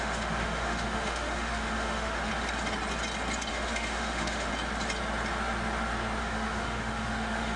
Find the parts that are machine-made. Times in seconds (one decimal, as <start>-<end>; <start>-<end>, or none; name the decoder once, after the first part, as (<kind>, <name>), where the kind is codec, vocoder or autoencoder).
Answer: 0.0-2.3 (autoencoder, DAC-VAE); 3.5-4.5; 6.2-7.6